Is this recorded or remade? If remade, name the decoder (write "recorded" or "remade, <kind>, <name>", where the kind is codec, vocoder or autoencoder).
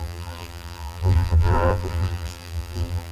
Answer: remade, vocoder, BigVGAN v2